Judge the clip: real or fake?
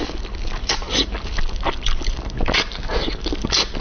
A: real